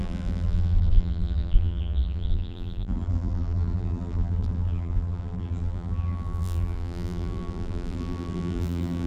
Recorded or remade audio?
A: remade